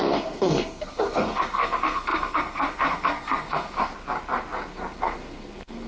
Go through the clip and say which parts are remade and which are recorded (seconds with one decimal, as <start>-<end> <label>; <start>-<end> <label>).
0.0-3.9 remade; 3.9-4.7 recorded; 4.7-5.9 remade